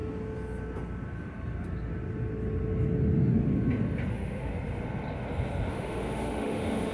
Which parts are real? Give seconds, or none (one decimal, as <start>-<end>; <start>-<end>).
0.0-4.1; 4.5-5.7